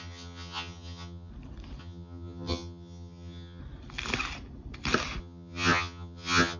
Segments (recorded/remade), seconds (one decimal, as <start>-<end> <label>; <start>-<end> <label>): 0.0-1.3 remade; 1.3-1.8 recorded; 1.8-3.6 remade; 3.6-5.2 recorded; 5.2-6.6 remade